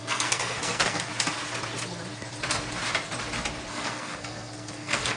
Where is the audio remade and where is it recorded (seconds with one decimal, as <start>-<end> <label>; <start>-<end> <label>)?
0.0-1.1 remade; 1.1-3.7 recorded; 3.7-5.2 remade

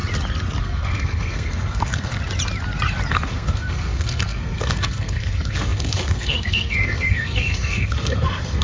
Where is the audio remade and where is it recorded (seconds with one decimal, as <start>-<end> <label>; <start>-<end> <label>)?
0.0-0.6 recorded; 0.6-2.1 remade; 2.1-3.1 recorded; 3.1-8.6 remade

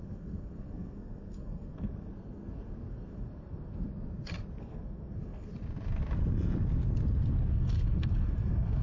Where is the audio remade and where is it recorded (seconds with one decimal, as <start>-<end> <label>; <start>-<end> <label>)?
0.0-3.9 remade; 3.9-4.6 recorded; 4.6-5.5 remade; 5.5-7.5 recorded; 7.5-8.8 remade

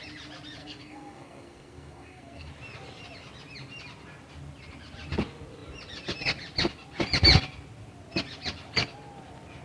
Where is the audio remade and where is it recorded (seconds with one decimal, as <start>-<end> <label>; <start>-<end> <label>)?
0.0-0.6 recorded; 0.6-2.5 remade; 2.5-9.6 recorded

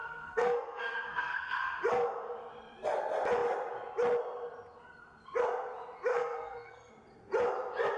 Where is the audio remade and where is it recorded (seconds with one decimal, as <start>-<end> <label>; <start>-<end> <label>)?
0.0-1.8 remade; 1.8-6.1 recorded; 6.1-6.9 remade; 6.9-8.0 recorded

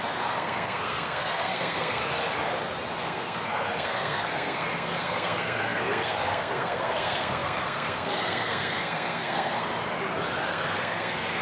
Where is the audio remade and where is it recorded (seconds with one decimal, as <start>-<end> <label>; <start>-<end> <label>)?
0.0-2.0 remade; 2.0-3.0 recorded; 3.0-9.7 remade; 9.7-10.5 recorded; 10.5-11.4 remade